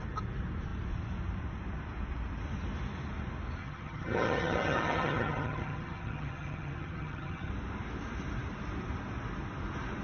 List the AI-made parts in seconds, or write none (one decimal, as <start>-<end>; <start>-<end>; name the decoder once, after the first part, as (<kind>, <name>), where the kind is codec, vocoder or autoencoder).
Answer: 3.6-7.5 (vocoder, HiFi-GAN)